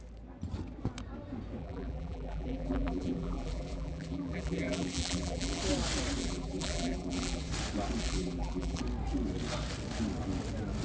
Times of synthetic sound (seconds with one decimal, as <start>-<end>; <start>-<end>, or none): 1.6-5.6; 6.2-7.5; 8.0-8.8